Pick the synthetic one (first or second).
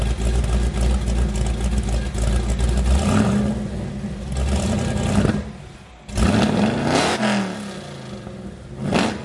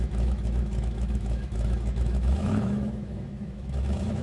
second